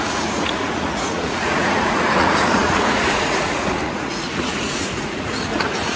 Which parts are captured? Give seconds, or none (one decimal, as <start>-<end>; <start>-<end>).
none